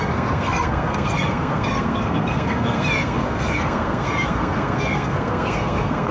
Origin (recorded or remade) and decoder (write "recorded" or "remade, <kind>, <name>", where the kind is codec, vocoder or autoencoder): remade, codec, SNAC